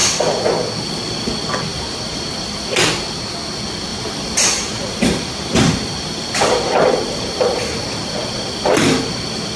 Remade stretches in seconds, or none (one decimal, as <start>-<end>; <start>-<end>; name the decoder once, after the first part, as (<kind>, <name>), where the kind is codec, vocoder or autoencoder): 1.7-2.7 (vocoder, BigVGAN v2); 3.9-7.8